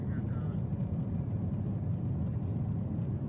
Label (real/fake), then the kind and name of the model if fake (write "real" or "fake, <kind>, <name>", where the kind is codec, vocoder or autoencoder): real